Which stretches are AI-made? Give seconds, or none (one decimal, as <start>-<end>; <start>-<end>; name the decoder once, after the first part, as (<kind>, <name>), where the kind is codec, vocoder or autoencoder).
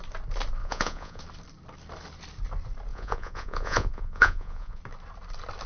0.6-1.2 (vocoder, Vocos); 2.9-4.8